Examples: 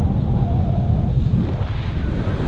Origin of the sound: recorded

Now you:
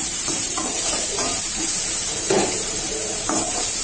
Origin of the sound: remade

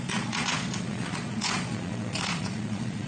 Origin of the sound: remade